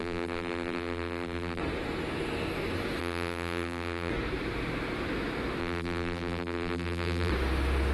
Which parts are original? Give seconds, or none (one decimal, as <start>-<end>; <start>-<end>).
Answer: 1.6-3.0; 4.1-5.6; 7.3-7.9